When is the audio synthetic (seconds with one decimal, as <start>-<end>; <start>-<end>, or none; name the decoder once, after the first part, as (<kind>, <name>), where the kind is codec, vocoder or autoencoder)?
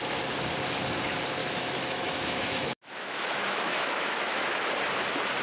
1.4-4.6 (autoencoder, DAC-VAE)